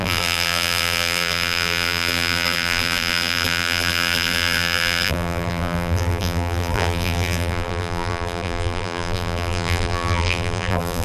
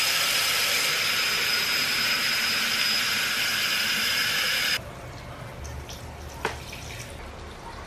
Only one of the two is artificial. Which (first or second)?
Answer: first